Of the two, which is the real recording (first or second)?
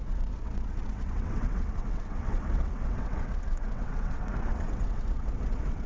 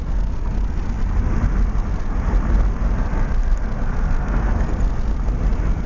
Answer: second